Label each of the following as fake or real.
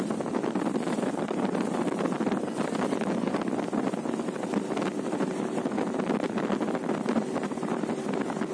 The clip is real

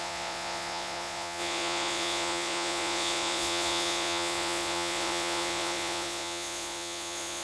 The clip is fake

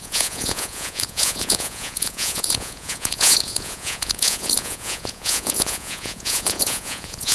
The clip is fake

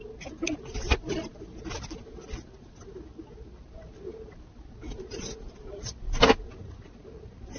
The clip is real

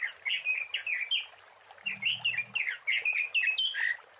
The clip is real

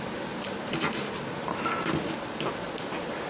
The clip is real